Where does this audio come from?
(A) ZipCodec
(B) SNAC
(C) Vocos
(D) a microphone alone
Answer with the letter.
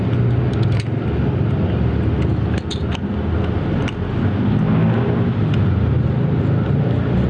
D